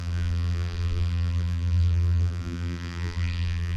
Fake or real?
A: fake